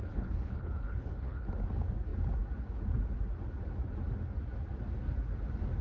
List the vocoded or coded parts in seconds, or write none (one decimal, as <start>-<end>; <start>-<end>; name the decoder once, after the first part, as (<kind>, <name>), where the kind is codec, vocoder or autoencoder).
0.0-1.5 (codec, HILCodec)

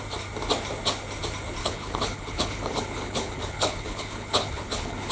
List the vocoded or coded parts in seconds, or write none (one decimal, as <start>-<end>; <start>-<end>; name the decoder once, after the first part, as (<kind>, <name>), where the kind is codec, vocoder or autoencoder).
1.6-5.1 (codec, HILCodec)